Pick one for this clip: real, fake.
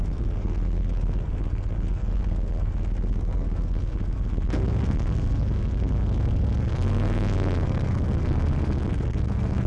fake